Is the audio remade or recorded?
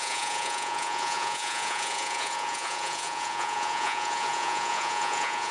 remade